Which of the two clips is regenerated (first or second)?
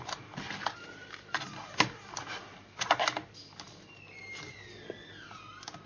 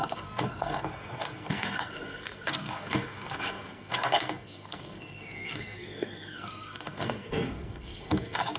second